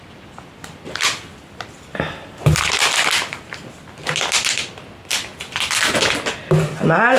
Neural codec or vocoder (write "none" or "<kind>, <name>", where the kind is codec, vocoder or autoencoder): none